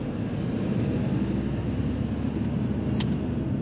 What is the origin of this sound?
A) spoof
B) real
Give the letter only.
B